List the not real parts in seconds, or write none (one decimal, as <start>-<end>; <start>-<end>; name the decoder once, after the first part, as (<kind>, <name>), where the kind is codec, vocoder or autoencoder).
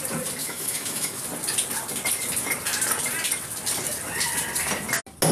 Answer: 0.4-1.2 (autoencoder, DAC-VAE)